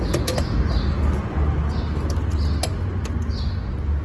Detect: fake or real real